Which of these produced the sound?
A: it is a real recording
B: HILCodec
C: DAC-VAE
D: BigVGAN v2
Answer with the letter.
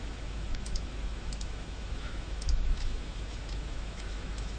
C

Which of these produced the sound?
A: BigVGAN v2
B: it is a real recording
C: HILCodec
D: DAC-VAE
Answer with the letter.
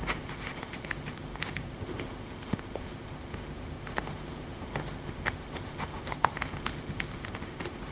D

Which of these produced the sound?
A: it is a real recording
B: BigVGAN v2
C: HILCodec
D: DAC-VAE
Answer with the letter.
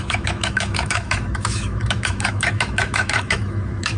D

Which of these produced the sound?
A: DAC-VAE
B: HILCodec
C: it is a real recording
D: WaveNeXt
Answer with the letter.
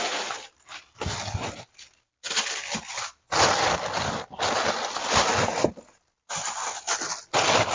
C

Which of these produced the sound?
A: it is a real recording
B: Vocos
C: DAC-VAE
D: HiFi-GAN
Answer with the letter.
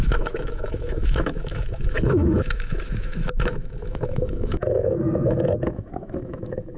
C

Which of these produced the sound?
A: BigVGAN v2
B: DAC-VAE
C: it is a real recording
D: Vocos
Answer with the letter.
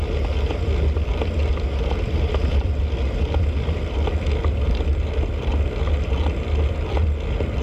C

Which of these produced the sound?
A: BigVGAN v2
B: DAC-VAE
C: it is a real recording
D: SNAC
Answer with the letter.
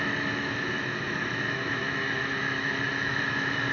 B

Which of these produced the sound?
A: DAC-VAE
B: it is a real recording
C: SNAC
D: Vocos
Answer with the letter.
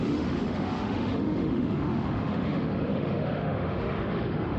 A